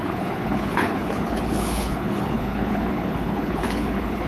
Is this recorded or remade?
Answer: remade